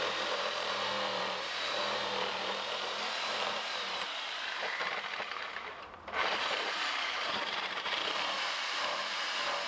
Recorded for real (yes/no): no